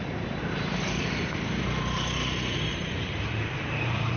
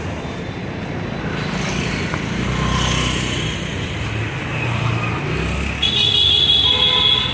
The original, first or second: second